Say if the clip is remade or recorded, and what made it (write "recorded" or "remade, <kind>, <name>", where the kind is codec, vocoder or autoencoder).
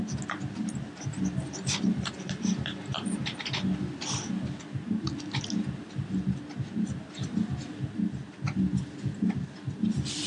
recorded